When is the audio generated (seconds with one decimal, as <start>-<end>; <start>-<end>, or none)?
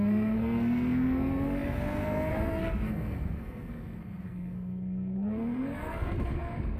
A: 0.0-6.8